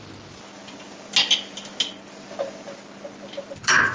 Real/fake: real